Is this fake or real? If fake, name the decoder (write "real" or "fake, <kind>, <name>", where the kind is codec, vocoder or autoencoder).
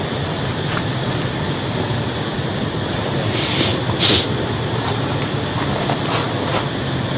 real